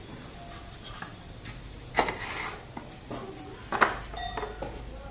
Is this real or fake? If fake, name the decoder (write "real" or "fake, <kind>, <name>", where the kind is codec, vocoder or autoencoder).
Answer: real